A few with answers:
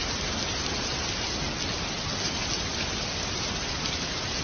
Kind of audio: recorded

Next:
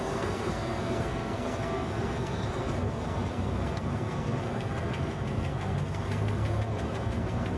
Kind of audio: remade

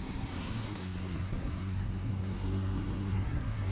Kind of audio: remade